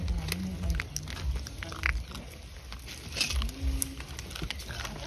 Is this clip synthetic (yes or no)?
no